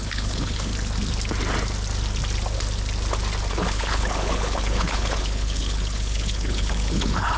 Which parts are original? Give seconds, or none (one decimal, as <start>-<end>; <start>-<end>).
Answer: 0.7-3.5